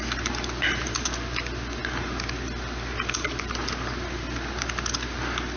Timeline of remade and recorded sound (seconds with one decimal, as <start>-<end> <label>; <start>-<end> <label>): 0.0-5.6 recorded